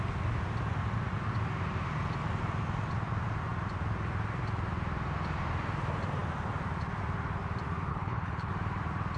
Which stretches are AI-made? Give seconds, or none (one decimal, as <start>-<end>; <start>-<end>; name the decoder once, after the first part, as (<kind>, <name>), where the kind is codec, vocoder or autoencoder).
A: 7.9-8.5 (codec, HILCodec)